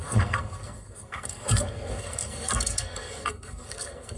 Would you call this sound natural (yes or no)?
no